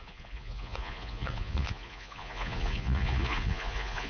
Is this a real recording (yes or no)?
no